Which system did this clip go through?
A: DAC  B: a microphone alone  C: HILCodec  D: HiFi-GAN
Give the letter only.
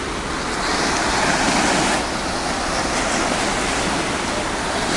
B